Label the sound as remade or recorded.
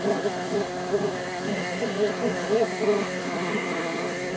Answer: remade